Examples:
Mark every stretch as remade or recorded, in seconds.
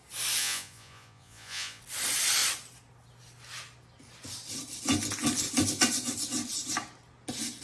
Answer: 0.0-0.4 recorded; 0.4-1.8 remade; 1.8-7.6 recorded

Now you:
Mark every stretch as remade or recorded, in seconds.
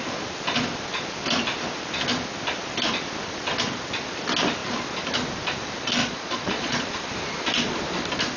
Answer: 0.0-6.0 recorded; 6.0-6.8 remade; 6.8-8.4 recorded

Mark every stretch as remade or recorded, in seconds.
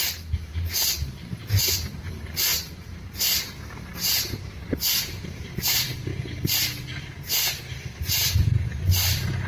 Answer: 0.0-6.1 remade; 6.1-7.6 recorded; 7.6-9.5 remade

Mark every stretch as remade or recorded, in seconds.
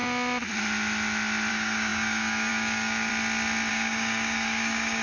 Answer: 0.0-1.5 recorded; 1.5-3.1 remade; 3.1-3.7 recorded; 3.7-5.0 remade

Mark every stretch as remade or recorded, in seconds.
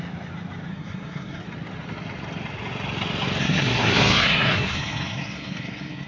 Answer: 0.0-0.7 recorded; 0.7-1.4 remade; 1.4-3.4 recorded; 3.4-6.1 remade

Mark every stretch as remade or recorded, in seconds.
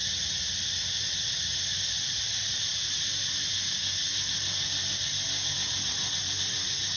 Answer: 0.0-7.0 recorded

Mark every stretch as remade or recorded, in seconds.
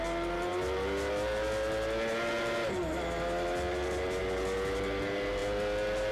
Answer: 0.0-6.1 recorded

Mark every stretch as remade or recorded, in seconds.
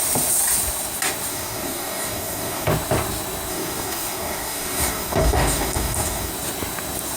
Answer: 0.0-1.3 recorded; 1.3-2.7 remade; 2.7-3.5 recorded; 3.5-6.3 remade; 6.3-7.2 recorded